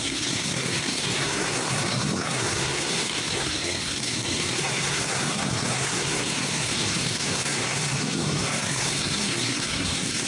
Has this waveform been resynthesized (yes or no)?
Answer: yes